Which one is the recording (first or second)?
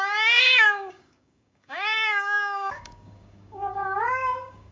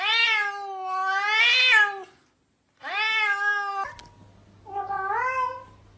second